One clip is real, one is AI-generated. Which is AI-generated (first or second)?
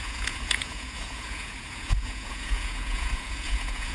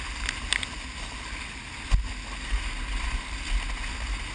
first